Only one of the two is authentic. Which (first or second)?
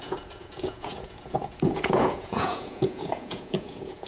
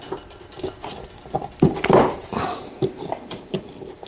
second